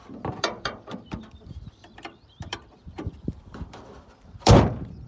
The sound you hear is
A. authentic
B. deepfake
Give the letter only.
B